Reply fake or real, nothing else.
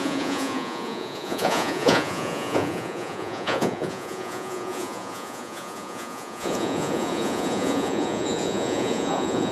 fake